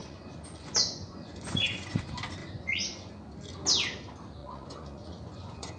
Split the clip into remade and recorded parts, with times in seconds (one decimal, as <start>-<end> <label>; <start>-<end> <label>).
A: 0.0-2.0 remade; 2.0-2.4 recorded; 2.4-3.1 remade; 3.1-4.4 recorded; 4.4-5.8 remade